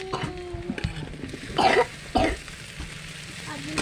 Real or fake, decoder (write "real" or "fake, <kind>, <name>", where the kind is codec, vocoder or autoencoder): real